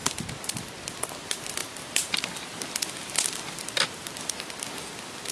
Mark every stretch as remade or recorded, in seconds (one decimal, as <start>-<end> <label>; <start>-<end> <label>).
0.0-5.3 recorded